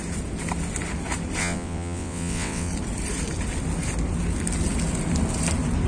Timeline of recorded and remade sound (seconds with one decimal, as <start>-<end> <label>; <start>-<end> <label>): 0.0-1.4 recorded; 1.4-2.7 remade; 2.7-5.9 recorded